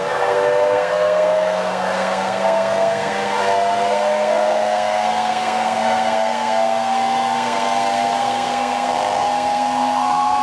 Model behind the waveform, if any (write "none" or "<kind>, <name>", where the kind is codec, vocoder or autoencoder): codec, SNAC